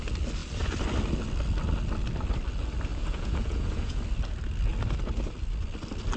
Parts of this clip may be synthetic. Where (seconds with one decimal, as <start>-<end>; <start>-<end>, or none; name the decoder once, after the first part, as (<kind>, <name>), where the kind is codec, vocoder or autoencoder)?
2.9-4.0 (vocoder, Vocos)